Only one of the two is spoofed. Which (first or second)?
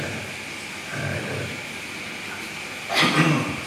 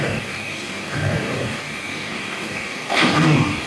second